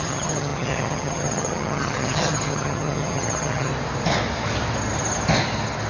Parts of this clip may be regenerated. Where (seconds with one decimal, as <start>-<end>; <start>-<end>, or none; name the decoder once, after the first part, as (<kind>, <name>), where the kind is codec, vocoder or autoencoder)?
0.0-3.7 (vocoder, HiFi-GAN)